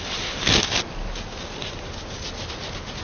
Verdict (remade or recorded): recorded